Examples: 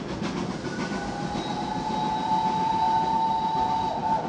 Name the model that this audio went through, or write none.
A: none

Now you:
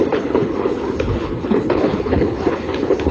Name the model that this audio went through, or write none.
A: codec, HILCodec